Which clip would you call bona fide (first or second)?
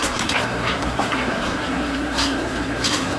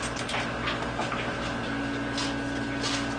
second